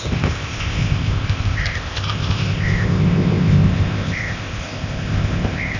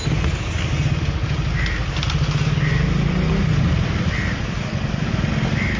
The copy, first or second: first